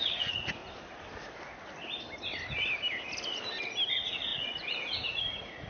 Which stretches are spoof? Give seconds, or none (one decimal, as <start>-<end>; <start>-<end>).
0.0-0.6; 3.9-5.7